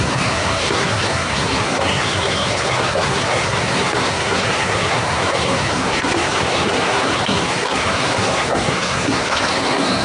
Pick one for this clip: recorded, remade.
remade